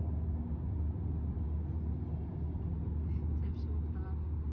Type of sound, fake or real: real